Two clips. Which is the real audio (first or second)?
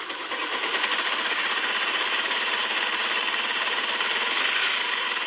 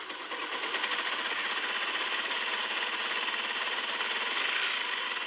second